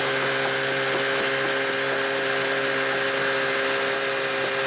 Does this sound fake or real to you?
real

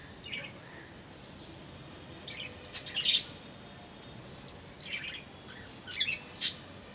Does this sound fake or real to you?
real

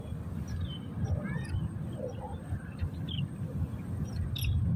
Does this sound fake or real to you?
real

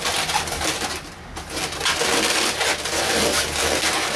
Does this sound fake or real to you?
real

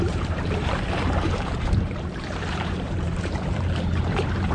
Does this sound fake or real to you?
fake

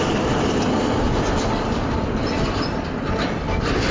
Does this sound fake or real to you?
real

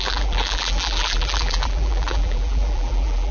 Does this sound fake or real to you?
fake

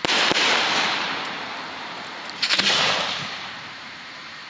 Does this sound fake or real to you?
fake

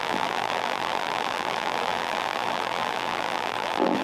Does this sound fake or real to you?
fake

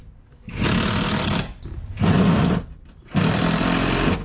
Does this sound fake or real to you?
real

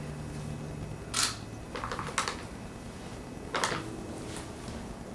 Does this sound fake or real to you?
real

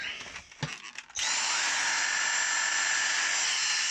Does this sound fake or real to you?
real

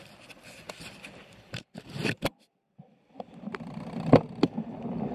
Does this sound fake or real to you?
fake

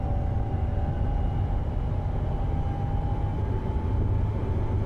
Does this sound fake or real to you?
real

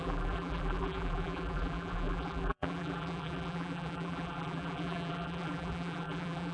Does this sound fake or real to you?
fake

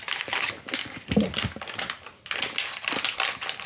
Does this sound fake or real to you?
real